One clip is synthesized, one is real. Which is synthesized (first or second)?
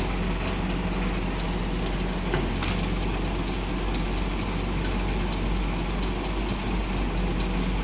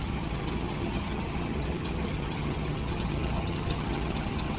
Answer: second